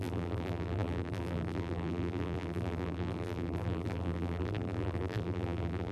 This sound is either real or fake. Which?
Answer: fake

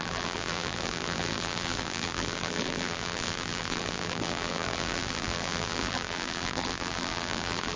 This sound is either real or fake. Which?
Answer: fake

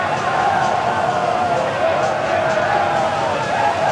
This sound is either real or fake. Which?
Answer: real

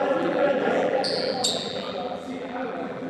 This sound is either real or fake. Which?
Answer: fake